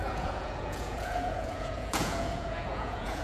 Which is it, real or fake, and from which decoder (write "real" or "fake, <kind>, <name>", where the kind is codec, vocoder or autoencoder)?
fake, vocoder, Vocos